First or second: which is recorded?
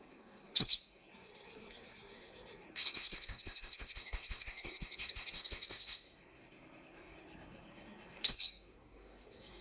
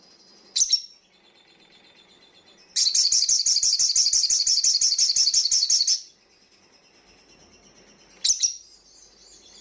second